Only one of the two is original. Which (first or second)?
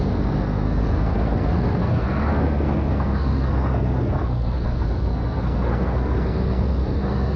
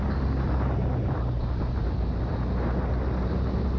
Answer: second